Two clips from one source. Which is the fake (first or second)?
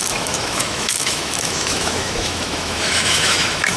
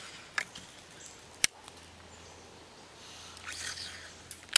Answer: first